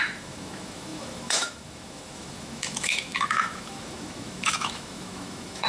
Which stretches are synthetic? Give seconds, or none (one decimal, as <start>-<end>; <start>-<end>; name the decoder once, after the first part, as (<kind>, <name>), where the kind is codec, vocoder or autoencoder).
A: 0.0-5.7 (autoencoder, DAC-VAE)